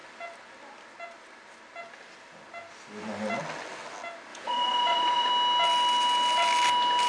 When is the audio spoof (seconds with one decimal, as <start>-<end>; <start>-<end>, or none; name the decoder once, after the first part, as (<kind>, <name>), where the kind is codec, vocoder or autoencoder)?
4.3-5.3 (vocoder, Vocos)